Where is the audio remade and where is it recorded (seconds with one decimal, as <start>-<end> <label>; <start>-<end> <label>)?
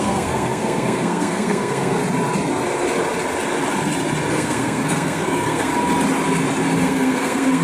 0.0-2.0 remade; 2.0-4.3 recorded; 4.3-5.7 remade; 5.7-6.8 recorded; 6.8-7.6 remade